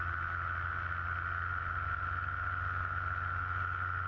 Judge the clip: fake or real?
real